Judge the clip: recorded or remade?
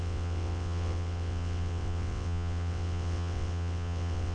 remade